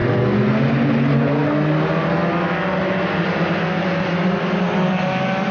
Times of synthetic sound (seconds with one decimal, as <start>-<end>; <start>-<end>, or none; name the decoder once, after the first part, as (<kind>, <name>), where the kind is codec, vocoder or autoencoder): none